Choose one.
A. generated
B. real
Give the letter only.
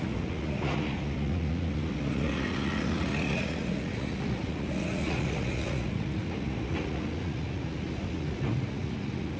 A